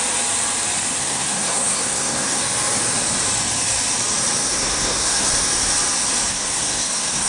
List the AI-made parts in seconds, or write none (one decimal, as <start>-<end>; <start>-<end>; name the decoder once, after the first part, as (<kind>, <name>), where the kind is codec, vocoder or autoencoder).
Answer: 1.0-2.4 (codec, SNAC); 4.5-5.3; 6.3-7.3